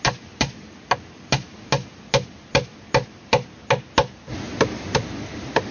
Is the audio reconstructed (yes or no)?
no